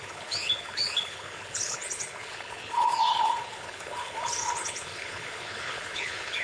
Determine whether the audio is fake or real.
fake